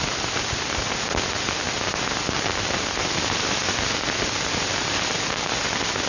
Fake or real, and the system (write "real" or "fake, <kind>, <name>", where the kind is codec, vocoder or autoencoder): real